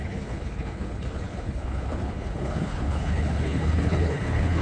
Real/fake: fake